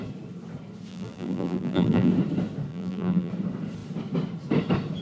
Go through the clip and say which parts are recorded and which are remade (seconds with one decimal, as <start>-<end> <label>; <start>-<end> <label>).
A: 0.0-0.9 recorded; 0.9-2.1 remade; 2.1-2.7 recorded; 2.7-3.3 remade; 3.3-5.0 recorded